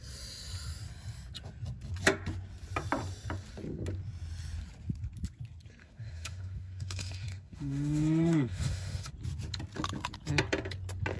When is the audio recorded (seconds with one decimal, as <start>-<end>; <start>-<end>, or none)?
0.0-5.8; 9.1-11.2